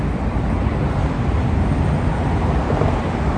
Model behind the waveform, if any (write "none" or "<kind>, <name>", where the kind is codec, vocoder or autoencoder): none